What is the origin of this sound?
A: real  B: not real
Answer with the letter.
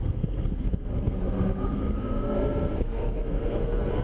B